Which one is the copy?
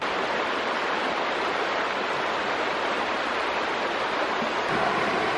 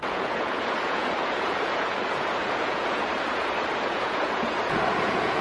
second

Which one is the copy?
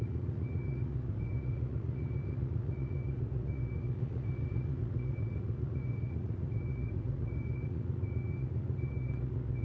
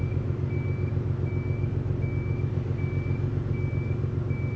first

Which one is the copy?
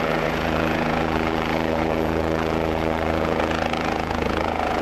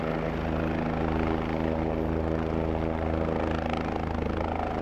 first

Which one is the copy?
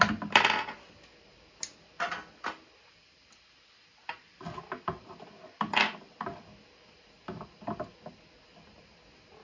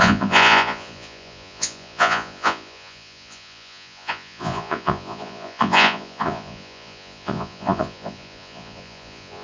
second